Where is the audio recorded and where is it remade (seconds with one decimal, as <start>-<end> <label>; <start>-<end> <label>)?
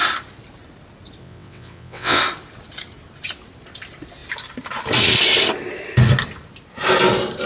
0.0-1.2 recorded; 1.2-2.2 remade; 2.2-7.5 recorded